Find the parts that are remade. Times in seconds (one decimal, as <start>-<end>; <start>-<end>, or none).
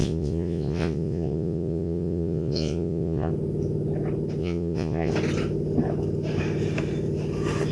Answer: 0.0-3.3; 4.4-5.1